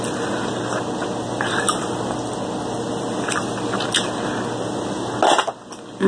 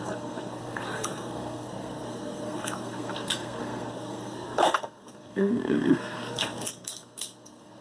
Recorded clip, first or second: first